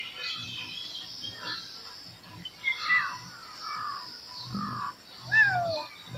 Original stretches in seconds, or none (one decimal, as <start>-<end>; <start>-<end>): 0.0-6.2